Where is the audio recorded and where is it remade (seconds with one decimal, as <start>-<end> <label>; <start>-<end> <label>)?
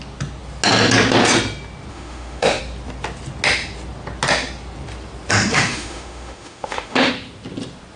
0.0-1.9 recorded; 1.9-2.6 remade; 2.6-5.5 recorded; 5.5-7.1 remade; 7.1-8.0 recorded